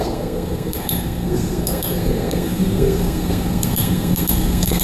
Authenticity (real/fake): fake